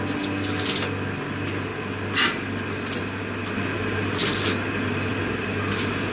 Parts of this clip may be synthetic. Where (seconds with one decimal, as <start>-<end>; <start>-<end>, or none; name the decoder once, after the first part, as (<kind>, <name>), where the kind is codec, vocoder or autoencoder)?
none